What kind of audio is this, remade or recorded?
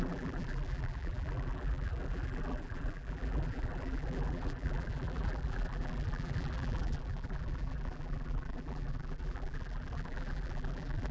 remade